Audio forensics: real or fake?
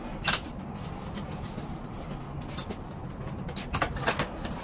real